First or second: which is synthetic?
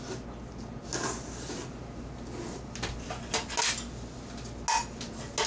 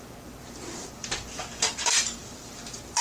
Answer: second